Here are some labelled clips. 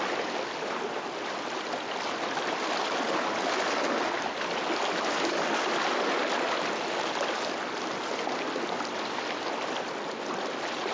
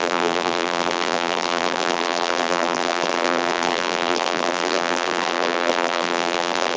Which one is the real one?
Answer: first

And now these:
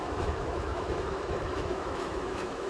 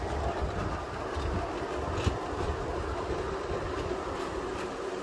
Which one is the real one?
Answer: second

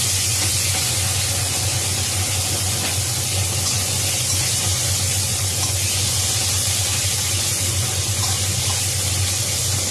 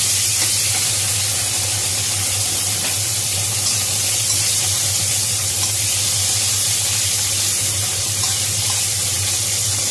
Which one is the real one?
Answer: second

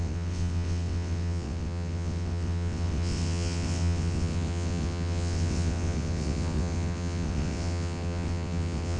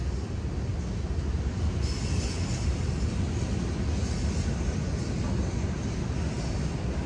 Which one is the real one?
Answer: second